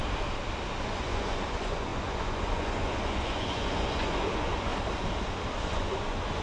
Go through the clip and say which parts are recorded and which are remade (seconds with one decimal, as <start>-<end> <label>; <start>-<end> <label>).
0.0-0.8 recorded; 0.8-4.7 remade; 4.7-5.6 recorded; 5.6-6.4 remade